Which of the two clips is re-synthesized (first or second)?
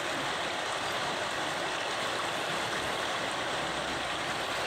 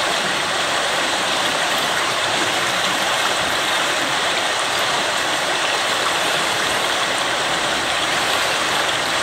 second